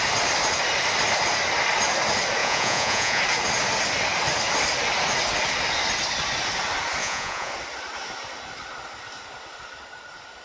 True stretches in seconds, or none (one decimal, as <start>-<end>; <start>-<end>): 0.0-2.4; 3.2-7.0; 7.5-10.4

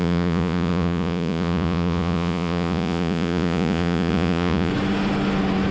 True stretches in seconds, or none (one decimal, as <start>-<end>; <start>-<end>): 4.7-5.7

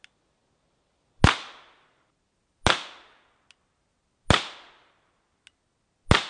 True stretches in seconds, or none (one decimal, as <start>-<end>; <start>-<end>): 0.0-6.3

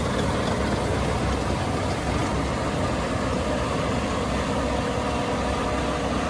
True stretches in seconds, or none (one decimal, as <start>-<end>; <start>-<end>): 0.0-6.3

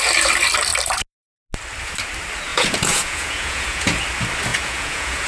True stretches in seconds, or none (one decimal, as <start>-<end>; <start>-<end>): 0.0-2.5; 4.0-4.5